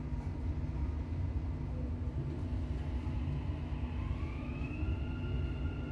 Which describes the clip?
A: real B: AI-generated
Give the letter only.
A